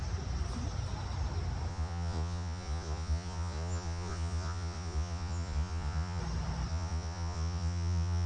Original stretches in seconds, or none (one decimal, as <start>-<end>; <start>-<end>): 0.0-1.7; 6.2-6.7

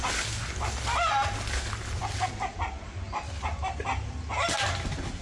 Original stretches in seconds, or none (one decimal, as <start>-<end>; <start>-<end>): 0.0-5.2

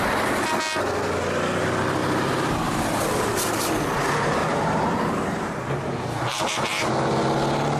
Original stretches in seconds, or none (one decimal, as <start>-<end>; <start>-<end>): 0.0-2.0; 3.9-4.4; 6.9-7.8

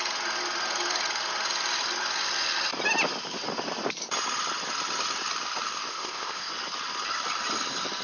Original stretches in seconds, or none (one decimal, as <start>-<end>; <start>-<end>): 0.0-5.9; 6.5-8.0

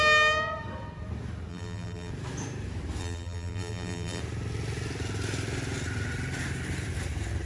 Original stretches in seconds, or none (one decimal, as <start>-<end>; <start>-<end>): 0.0-1.5; 2.1-3.0; 4.2-7.5

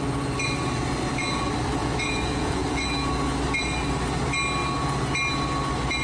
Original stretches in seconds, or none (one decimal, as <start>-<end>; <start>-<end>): 0.0-1.8; 2.8-6.0

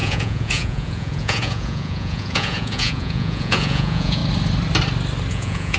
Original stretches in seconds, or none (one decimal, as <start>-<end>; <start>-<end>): 4.2-5.3